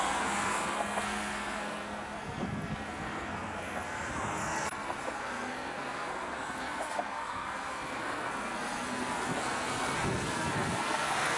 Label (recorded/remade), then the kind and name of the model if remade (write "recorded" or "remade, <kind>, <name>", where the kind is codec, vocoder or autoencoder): remade, codec, SNAC